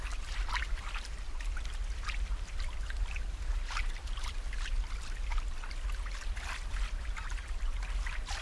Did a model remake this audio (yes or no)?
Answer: no